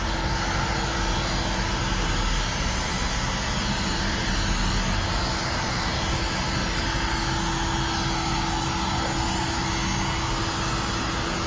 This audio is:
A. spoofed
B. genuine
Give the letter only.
B